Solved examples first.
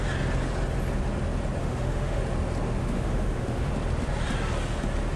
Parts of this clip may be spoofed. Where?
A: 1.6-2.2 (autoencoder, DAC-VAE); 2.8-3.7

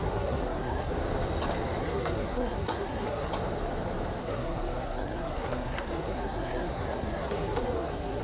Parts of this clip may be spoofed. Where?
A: 0.0-0.9 (codec, SNAC); 1.8-3.3; 4.2-8.2

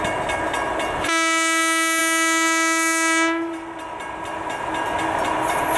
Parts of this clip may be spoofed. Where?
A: none

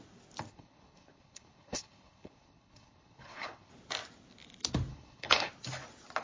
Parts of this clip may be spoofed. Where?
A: 0.5-3.7 (codec, HILCodec); 4.9-5.5

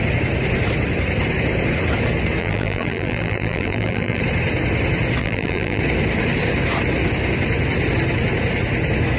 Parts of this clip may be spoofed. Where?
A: 2.4-4.2 (vocoder, BigVGAN v2); 5.2-5.8

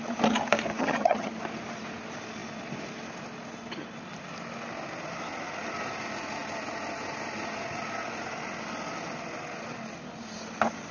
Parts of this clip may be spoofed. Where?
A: 0.8-1.3 (vocoder, HiFi-GAN)

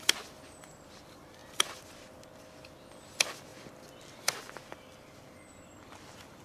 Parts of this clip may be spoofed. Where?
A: 0.0-1.4 (vocoder, BigVGAN v2); 3.1-3.5; 4.8-6.4

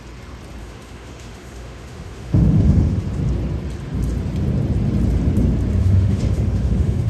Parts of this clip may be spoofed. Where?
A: 0.6-3.0 (autoencoder, DAC-VAE); 5.8-7.1